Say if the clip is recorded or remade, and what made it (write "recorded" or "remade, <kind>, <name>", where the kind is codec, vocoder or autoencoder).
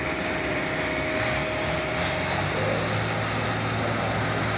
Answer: recorded